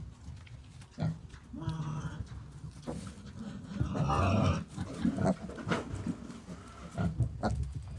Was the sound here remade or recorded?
recorded